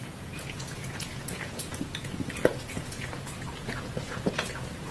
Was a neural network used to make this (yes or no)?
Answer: yes